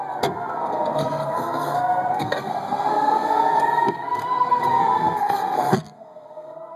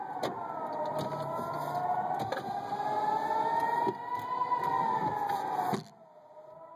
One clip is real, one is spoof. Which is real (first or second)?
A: second